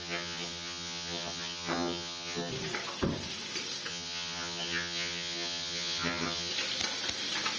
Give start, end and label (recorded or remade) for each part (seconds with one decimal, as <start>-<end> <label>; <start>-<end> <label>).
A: 0.0-2.5 remade; 2.5-3.9 recorded; 3.9-6.5 remade; 6.5-7.6 recorded